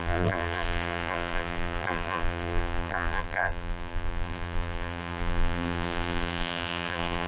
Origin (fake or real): fake